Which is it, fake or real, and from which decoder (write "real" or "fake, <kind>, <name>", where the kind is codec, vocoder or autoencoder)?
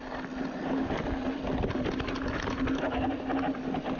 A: real